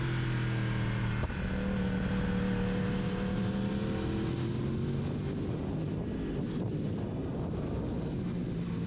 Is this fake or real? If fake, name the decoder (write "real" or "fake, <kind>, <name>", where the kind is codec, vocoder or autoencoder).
real